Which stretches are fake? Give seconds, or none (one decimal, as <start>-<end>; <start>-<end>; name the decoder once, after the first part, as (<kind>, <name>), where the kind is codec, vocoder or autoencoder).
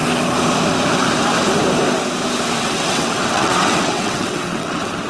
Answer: 2.6-5.1 (vocoder, WaveNeXt)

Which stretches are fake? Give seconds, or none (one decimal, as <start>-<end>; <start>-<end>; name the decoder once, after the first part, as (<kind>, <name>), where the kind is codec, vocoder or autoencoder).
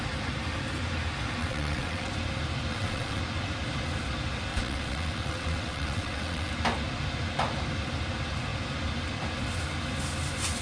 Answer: 1.4-2.1 (vocoder, WaveNeXt); 2.7-3.2; 4.5-6.5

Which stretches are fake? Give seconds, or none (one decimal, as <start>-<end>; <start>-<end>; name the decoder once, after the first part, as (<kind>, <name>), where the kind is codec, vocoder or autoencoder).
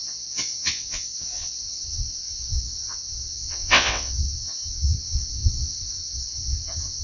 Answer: 0.0-7.0 (vocoder, WaveNeXt)